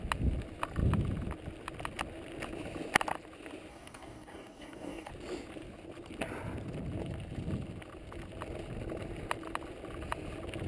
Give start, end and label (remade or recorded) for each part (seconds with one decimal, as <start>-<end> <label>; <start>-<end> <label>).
0.0-3.7 recorded; 3.7-5.1 remade; 5.1-10.7 recorded

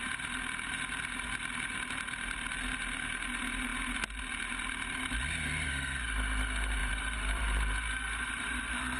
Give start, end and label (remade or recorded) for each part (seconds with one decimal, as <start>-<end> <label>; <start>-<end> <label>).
0.0-6.8 recorded; 6.8-8.6 remade; 8.6-9.0 recorded

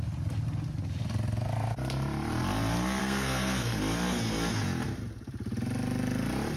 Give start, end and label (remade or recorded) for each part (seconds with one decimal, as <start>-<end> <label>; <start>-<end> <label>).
0.0-3.0 recorded; 3.0-3.8 remade; 3.8-6.6 recorded

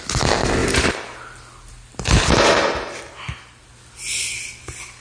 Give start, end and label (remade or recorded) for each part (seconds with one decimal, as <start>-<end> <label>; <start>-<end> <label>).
0.0-0.6 recorded; 0.6-3.6 remade; 3.6-5.0 recorded

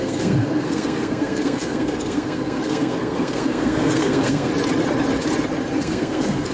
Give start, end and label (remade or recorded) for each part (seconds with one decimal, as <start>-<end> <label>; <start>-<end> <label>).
0.0-4.5 remade; 4.5-5.8 recorded; 5.8-6.5 remade

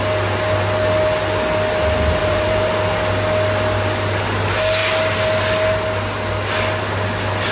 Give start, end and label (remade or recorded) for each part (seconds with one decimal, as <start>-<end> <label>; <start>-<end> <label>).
0.0-2.2 recorded; 2.2-2.7 remade; 2.7-7.5 recorded

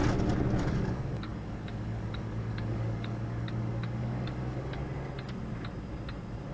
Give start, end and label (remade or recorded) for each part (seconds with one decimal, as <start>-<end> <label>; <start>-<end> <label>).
0.0-0.6 recorded; 0.6-4.8 remade; 4.8-6.5 recorded